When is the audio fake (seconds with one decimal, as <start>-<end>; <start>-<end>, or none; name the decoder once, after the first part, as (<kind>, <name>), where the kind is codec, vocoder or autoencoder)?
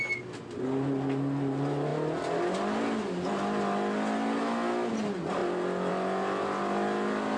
none